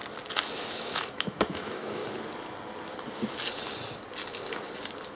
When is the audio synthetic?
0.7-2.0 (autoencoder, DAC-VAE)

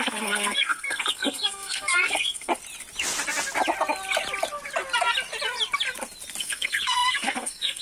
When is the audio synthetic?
0.0-2.5 (codec, SNAC); 6.4-7.8

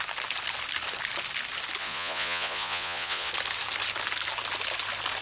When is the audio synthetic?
1.8-3.3 (vocoder, Vocos)

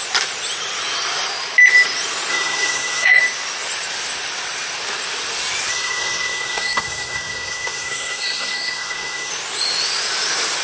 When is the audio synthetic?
2.3-3.2 (codec, SNAC); 5.7-9.3

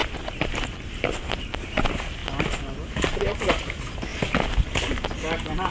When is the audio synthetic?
none